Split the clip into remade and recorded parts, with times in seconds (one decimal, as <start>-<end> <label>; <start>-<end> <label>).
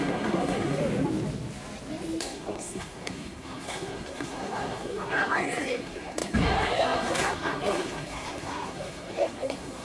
0.0-0.8 remade; 0.8-2.2 recorded; 2.2-9.8 remade